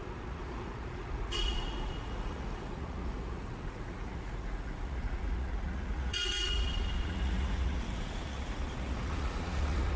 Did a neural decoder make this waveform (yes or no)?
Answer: yes